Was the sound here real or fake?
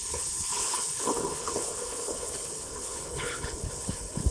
fake